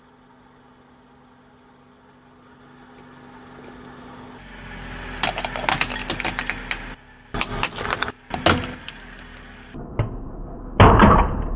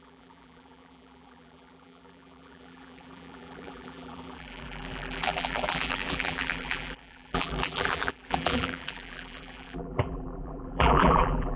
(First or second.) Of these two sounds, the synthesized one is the second